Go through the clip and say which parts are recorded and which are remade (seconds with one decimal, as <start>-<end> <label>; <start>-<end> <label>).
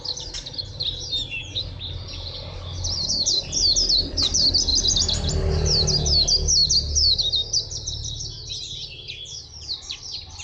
0.0-10.4 recorded